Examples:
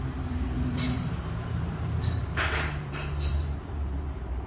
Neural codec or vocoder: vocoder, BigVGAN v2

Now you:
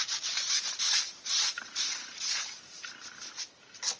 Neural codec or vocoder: vocoder, BigVGAN v2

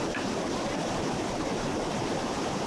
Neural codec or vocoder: none